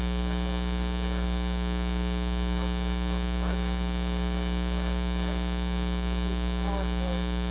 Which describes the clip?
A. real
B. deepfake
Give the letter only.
B